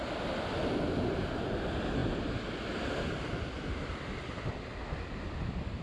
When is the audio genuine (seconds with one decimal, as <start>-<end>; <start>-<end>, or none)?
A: 0.0-2.0; 4.5-5.8